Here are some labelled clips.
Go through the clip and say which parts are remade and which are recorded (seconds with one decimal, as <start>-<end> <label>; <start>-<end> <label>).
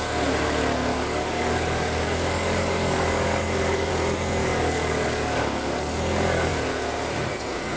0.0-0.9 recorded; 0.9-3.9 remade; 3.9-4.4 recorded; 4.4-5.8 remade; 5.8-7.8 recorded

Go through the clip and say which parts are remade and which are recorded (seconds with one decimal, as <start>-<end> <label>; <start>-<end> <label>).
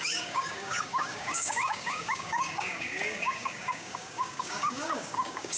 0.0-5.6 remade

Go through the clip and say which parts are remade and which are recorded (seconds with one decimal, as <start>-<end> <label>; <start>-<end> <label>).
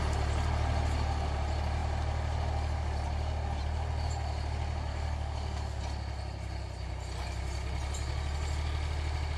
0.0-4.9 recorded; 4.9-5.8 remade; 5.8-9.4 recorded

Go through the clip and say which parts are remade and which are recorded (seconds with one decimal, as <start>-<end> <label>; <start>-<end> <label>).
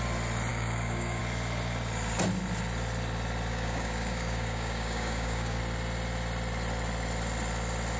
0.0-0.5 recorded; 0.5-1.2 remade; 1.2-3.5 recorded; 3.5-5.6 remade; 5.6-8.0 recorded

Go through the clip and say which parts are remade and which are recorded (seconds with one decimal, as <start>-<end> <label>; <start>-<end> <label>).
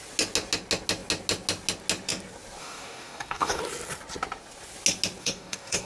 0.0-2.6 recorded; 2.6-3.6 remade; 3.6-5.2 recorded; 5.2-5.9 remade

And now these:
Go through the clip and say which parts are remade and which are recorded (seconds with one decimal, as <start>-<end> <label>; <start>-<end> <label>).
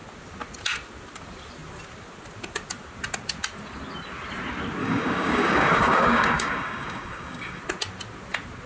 0.0-4.8 recorded; 4.8-7.6 remade; 7.6-8.7 recorded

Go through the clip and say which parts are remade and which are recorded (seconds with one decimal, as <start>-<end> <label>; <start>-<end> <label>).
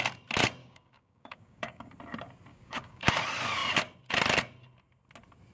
0.0-0.6 recorded; 0.6-1.9 remade; 1.9-2.5 recorded; 2.5-3.1 remade; 3.1-5.5 recorded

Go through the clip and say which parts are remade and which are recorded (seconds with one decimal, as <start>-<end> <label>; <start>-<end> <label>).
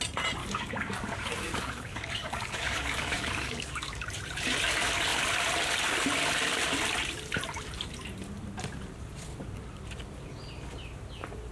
0.0-0.4 recorded; 0.4-4.1 remade; 4.1-11.5 recorded